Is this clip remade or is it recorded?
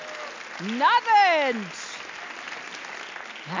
recorded